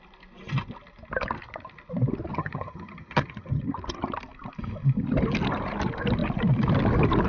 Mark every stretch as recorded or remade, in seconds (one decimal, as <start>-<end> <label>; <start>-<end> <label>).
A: 0.0-2.3 recorded; 2.3-3.6 remade; 3.6-7.3 recorded